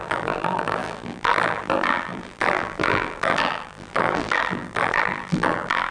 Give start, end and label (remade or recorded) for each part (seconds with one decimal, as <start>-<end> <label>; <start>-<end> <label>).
0.0-5.9 remade